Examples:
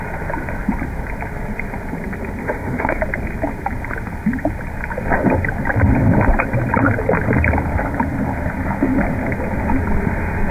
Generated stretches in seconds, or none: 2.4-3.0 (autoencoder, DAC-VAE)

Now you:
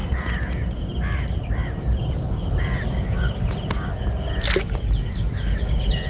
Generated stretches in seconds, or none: none

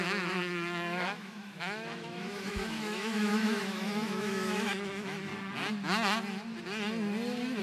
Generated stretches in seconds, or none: 0.0-5.3 (autoencoder, DAC-VAE)

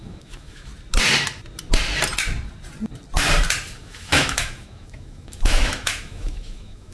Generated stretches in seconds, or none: 0.0-0.7 (autoencoder, DAC-VAE); 3.8-6.9

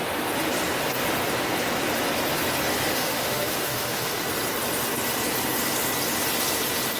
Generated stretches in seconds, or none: 2.9-4.2 (autoencoder, DAC-VAE)

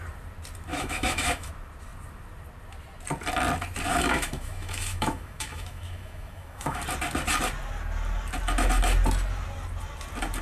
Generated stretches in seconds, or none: 0.7-1.5 (autoencoder, DAC-VAE); 3.9-6.8